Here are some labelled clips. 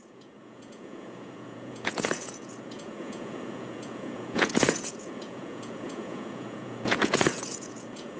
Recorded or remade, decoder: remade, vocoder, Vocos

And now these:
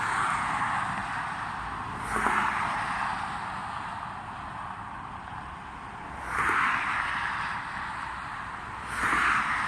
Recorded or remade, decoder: recorded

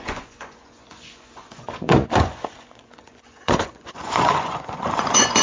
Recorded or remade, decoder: remade, vocoder, Vocos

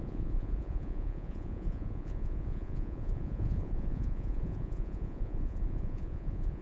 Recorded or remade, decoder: remade, vocoder, Vocos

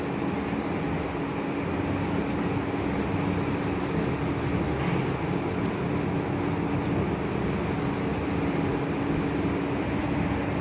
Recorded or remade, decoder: recorded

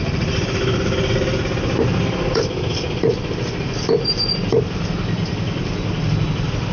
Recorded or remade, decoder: recorded